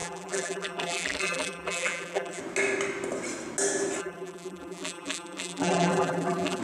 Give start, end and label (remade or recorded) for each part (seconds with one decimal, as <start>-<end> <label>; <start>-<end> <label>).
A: 0.0-2.4 remade; 2.4-4.0 recorded; 4.0-6.6 remade